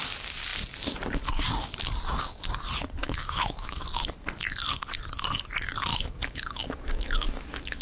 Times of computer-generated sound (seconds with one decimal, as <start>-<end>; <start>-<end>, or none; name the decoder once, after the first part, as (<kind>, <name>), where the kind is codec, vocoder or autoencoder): 3.0-3.8 (autoencoder, DAC-VAE); 5.9-7.8